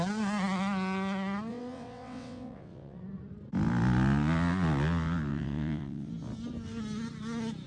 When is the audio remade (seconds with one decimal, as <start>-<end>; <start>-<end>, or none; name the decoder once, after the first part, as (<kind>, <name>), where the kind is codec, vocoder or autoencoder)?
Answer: 1.5-3.0 (vocoder, WaveNeXt); 5.3-6.1